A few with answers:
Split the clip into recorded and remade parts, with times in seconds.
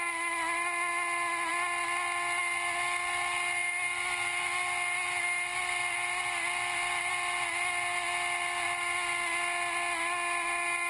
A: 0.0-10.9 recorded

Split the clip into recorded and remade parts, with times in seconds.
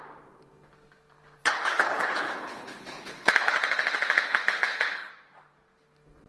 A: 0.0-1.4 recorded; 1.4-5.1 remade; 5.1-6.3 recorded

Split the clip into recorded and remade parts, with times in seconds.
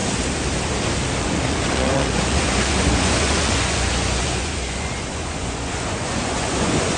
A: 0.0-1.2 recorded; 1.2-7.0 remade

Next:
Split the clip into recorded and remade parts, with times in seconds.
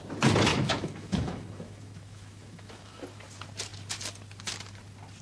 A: 0.0-0.5 recorded; 0.5-3.0 remade; 3.0-5.2 recorded